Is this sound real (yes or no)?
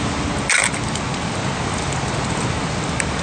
yes